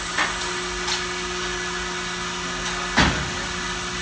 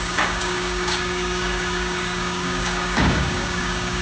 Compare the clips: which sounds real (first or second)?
first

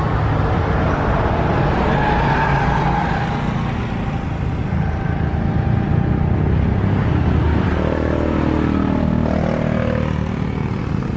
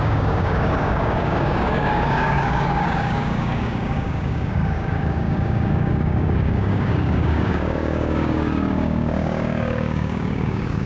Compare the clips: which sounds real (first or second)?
first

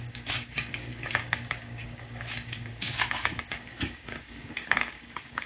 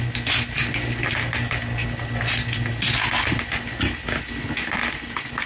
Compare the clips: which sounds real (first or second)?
second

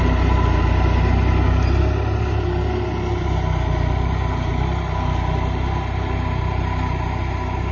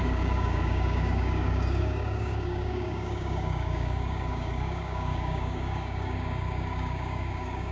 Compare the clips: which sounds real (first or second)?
first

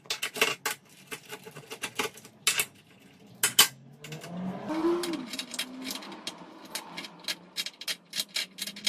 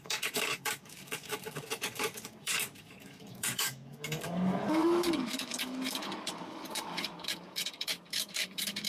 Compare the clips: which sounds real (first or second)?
first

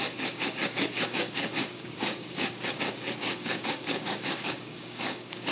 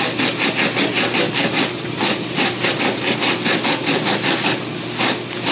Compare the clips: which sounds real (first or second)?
second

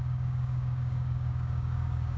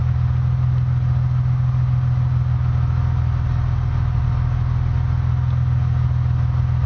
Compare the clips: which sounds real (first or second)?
second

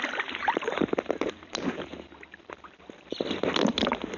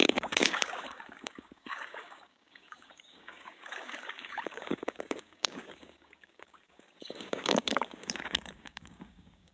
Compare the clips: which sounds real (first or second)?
first